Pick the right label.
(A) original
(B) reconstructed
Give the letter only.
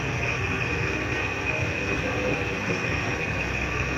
B